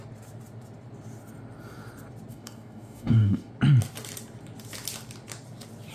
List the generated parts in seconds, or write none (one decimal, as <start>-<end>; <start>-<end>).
2.3-3.5